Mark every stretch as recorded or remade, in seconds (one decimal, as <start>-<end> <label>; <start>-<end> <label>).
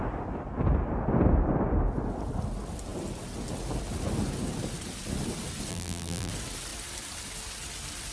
0.0-5.7 recorded; 5.7-6.3 remade; 6.3-8.1 recorded